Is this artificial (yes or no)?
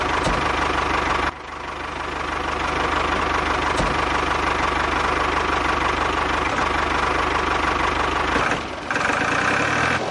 no